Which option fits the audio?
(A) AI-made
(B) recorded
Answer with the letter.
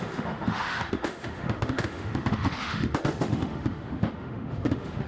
A